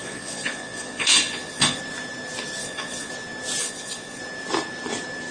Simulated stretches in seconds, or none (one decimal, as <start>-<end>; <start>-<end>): 0.0-1.8; 2.6-3.1; 3.6-4.2